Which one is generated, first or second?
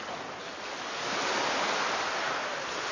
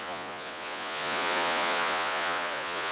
second